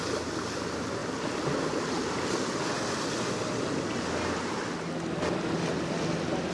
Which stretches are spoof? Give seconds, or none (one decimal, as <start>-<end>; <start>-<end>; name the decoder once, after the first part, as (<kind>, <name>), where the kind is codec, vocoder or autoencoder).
none